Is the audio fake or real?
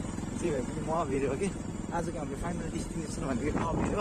fake